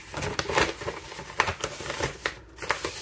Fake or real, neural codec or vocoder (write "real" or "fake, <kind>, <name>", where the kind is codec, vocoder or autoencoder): real